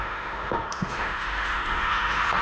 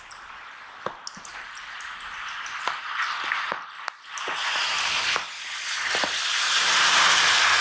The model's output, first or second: first